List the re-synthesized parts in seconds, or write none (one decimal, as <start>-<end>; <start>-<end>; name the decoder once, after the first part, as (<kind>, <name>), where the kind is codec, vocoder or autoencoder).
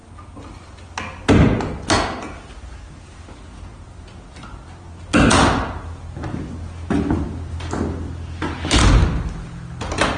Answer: none